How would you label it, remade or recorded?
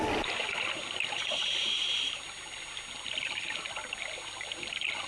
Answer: recorded